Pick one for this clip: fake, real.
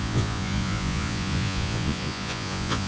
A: fake